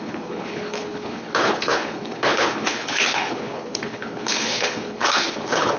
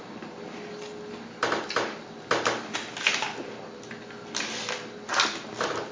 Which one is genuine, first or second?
second